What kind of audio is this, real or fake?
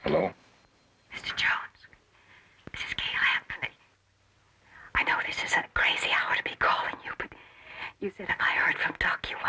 real